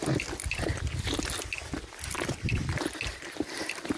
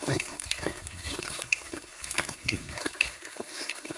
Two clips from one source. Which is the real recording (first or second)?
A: first